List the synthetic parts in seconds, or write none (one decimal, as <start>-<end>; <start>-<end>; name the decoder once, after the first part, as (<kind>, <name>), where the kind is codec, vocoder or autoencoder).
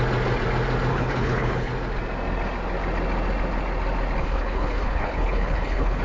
0.9-1.7 (codec, HILCodec); 4.2-6.0